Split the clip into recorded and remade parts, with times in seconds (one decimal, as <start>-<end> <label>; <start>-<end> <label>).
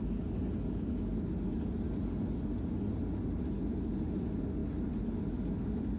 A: 0.0-6.0 recorded